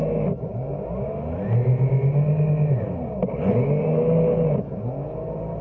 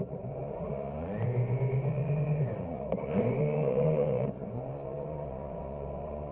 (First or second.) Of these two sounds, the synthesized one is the second